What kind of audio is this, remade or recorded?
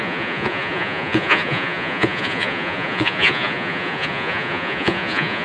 remade